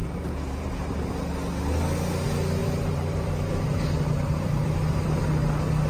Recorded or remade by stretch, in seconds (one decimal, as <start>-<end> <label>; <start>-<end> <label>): 0.0-1.1 remade; 1.1-2.6 recorded; 2.6-5.2 remade; 5.2-5.9 recorded